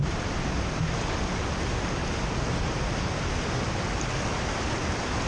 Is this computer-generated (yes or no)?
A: no